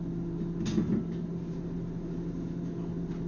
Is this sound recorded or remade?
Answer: recorded